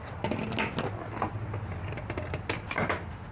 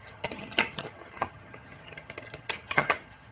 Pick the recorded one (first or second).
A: first